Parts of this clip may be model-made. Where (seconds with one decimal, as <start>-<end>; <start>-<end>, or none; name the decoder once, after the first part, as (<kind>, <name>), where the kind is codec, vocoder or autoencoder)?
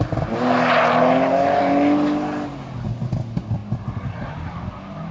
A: none